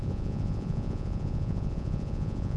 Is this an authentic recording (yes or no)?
no